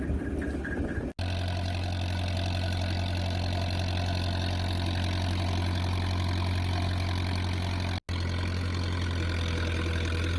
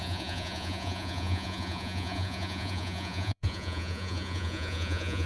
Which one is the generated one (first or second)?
second